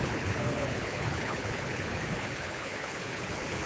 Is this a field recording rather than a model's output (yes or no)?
no